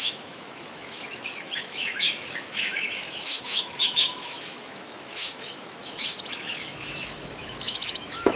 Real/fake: fake